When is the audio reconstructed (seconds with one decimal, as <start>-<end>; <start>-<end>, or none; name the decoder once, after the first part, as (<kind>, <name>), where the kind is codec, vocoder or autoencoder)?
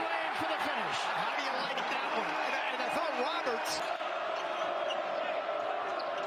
0.9-4.7 (vocoder, BigVGAN v2)